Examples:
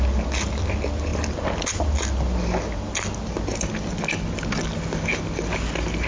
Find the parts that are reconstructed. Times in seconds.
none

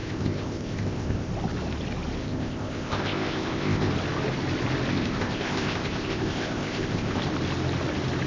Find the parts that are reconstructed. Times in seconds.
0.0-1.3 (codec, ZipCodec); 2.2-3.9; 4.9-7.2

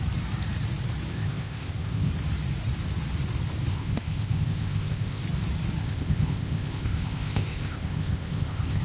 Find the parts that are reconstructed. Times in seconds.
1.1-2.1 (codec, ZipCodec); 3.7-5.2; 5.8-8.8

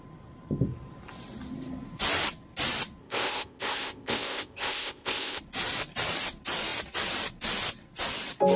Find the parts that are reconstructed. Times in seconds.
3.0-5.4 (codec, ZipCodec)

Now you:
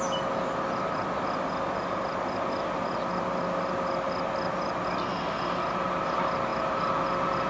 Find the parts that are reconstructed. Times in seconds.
none

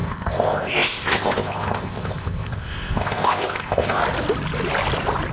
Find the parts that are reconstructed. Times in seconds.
0.0-4.0 (codec, ZipCodec)